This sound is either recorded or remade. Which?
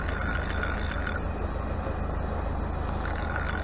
recorded